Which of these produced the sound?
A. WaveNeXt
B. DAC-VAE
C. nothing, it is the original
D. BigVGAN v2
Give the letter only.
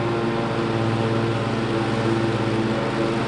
C